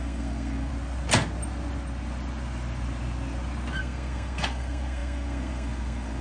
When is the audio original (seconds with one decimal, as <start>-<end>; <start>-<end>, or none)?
0.7-3.8